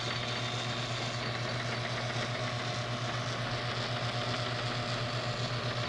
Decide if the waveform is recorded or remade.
recorded